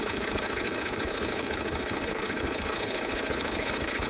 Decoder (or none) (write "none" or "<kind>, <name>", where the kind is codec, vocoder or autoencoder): codec, HILCodec